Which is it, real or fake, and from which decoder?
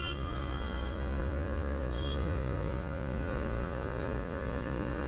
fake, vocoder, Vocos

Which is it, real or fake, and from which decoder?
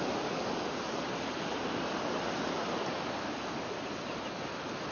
real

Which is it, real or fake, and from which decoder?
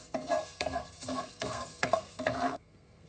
fake, codec, SNAC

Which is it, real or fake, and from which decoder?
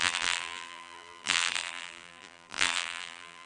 fake, vocoder, BigVGAN v2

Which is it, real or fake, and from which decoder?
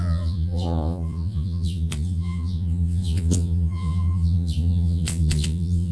fake, vocoder, Vocos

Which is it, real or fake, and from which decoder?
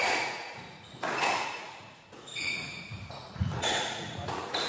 fake, vocoder, Vocos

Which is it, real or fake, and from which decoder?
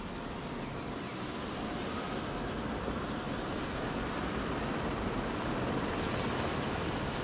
real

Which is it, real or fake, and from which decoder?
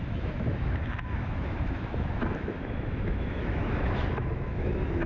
fake, autoencoder, DAC-VAE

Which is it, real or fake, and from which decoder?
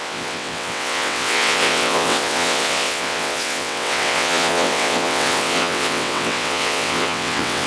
fake, vocoder, WaveNeXt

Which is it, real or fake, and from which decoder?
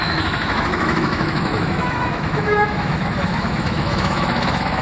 fake, autoencoder, DAC-VAE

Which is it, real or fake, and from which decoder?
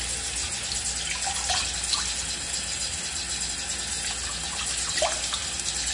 real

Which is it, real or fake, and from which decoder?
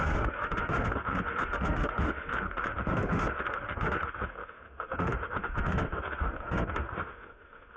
fake, autoencoder, DAC-VAE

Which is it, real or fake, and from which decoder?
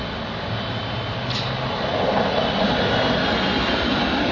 real